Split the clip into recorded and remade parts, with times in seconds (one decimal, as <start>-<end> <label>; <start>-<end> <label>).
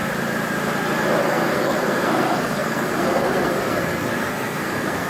0.0-1.2 recorded; 1.2-5.1 remade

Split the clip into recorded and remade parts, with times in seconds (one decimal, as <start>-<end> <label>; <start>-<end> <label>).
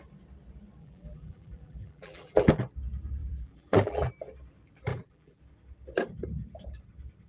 0.0-0.8 recorded; 0.8-2.5 remade; 2.5-3.2 recorded; 3.2-4.1 remade; 4.1-4.9 recorded; 4.9-5.4 remade; 5.4-7.3 recorded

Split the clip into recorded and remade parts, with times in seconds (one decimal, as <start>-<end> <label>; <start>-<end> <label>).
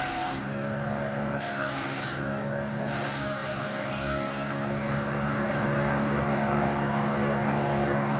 0.0-8.2 remade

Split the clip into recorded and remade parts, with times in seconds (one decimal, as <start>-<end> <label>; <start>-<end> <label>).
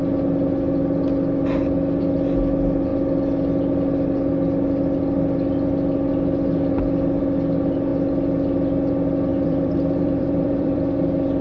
0.0-9.3 recorded; 9.3-11.0 remade; 11.0-11.4 recorded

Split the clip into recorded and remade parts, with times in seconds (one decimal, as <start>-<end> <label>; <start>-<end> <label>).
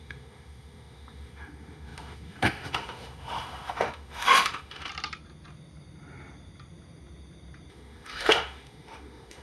0.0-4.9 remade; 4.9-7.7 recorded; 7.7-9.4 remade